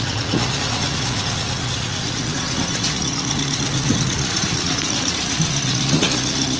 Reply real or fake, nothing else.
fake